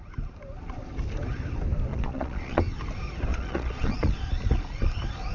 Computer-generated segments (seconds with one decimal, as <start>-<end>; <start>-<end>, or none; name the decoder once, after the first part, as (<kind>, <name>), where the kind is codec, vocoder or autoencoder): 1.9-2.6 (vocoder, Vocos); 3.3-4.3